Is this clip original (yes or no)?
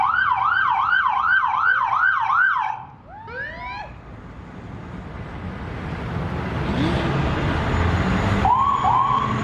yes